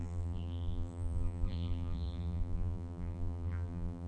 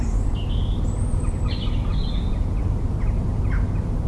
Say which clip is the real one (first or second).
second